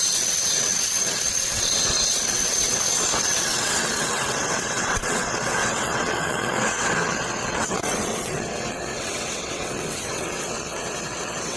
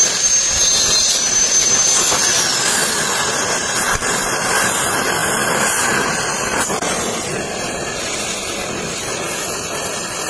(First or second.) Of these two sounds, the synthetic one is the first